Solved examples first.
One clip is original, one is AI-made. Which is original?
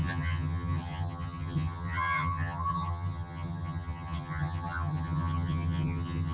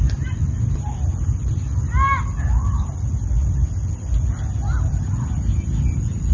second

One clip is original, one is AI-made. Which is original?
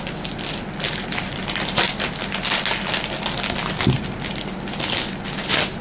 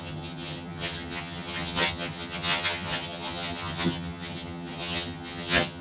first